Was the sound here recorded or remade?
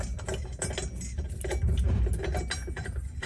recorded